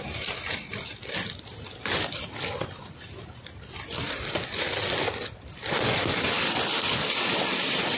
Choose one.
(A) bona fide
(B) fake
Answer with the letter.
A